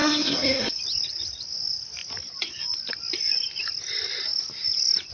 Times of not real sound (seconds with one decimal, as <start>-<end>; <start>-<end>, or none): 0.0-0.8